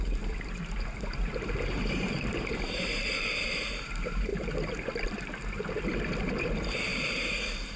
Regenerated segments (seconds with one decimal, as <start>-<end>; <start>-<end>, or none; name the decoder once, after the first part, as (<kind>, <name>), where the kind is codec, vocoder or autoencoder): 0.0-4.3 (vocoder, BigVGAN v2); 6.2-7.8